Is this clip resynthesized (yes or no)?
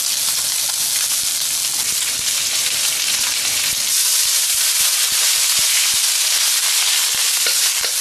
no